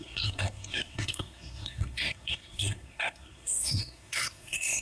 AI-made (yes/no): yes